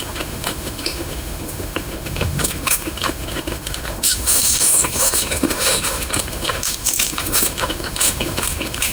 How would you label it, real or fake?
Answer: fake